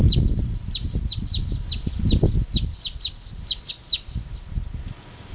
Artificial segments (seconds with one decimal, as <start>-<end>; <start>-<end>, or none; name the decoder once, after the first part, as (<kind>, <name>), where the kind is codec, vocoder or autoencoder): none